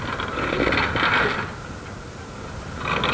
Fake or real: real